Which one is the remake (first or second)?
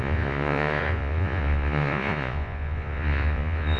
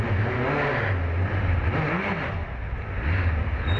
first